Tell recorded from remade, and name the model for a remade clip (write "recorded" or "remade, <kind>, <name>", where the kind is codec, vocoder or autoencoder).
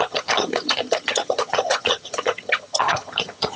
remade, vocoder, HiFi-GAN